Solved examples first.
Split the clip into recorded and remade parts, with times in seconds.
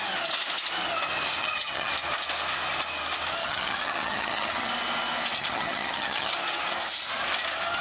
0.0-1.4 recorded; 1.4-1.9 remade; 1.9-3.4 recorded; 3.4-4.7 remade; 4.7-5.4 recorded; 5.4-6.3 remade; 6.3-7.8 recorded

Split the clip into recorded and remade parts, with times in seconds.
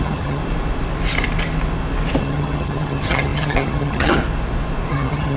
0.0-0.4 remade; 0.4-2.2 recorded; 2.2-4.2 remade; 4.2-4.9 recorded; 4.9-5.4 remade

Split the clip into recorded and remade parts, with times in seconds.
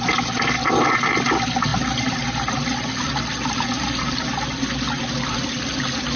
0.0-6.2 recorded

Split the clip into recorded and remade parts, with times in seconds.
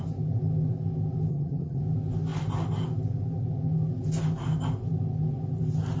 0.0-1.3 recorded; 1.3-1.8 remade; 1.8-6.0 recorded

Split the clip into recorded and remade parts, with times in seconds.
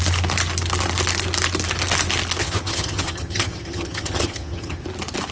0.0-2.4 recorded; 2.4-4.8 remade; 4.8-5.3 recorded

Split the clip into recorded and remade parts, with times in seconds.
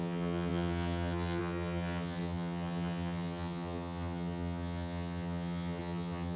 0.0-6.4 remade